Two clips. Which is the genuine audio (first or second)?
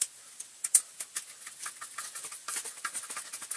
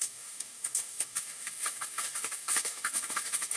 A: first